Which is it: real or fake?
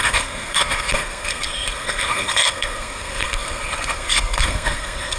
fake